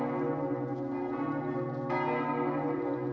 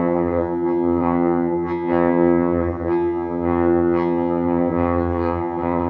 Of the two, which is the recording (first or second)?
first